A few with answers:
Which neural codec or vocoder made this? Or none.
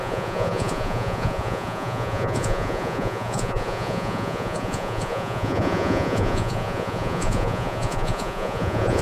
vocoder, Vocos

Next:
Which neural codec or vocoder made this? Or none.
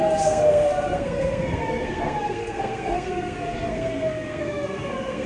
codec, SNAC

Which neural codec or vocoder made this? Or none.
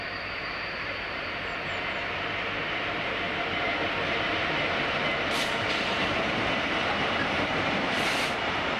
vocoder, BigVGAN v2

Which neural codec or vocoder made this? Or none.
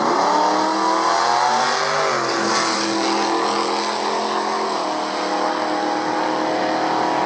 none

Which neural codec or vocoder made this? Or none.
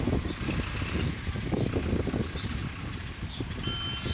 none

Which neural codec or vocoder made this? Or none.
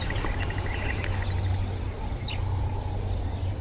none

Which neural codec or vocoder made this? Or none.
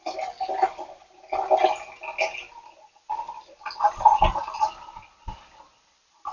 none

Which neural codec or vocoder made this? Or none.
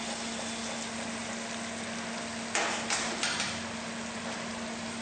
none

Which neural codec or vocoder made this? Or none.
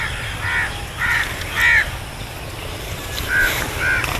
none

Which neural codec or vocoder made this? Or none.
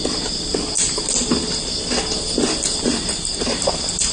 none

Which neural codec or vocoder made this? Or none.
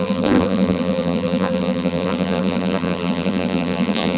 vocoder, BigVGAN v2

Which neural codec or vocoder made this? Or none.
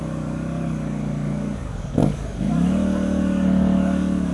codec, DAC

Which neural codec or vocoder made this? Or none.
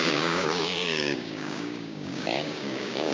codec, DAC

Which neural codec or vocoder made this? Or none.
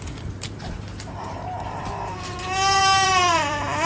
vocoder, BigVGAN v2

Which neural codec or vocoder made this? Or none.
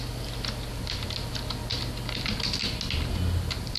none